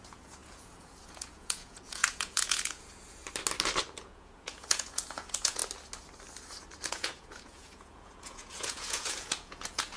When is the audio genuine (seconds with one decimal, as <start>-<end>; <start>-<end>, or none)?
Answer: 3.2-4.0; 5.6-6.9